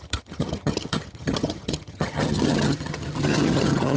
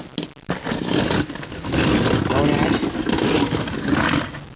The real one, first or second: second